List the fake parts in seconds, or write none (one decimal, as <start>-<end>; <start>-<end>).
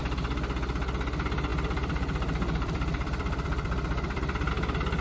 1.5-4.5